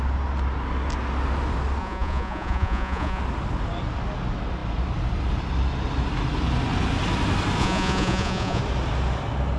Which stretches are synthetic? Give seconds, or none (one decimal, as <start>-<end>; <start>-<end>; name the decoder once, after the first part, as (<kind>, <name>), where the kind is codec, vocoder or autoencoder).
1.8-3.2 (vocoder, Vocos); 7.6-8.6